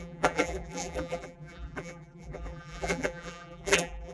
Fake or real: fake